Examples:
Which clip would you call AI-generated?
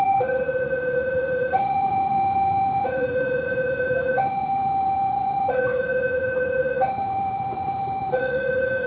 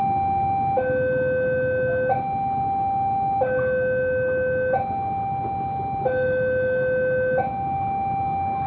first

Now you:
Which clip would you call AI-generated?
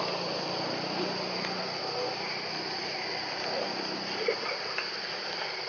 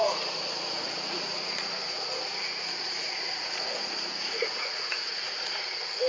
second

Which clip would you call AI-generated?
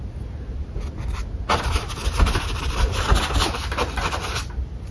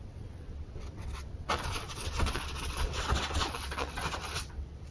second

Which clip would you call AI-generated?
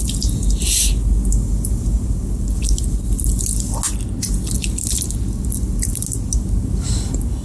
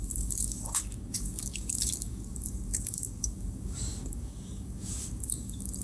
second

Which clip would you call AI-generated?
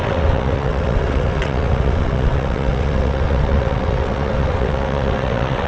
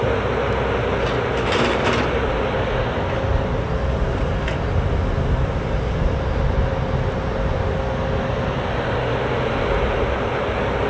first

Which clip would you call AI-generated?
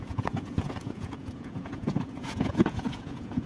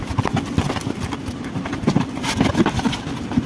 first